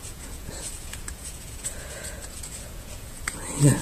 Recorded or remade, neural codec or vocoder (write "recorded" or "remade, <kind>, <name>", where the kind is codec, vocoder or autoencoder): remade, vocoder, Vocos